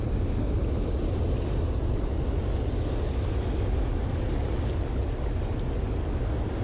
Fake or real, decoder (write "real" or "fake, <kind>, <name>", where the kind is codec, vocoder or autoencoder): real